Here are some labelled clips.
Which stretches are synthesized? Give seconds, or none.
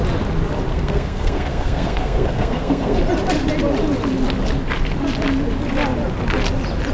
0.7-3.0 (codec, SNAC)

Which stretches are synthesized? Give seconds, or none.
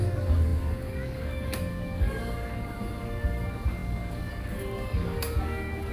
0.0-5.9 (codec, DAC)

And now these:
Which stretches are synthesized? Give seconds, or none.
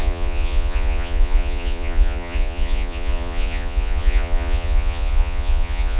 0.0-6.0 (vocoder, Vocos)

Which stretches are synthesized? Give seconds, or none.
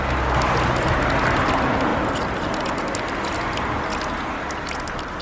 none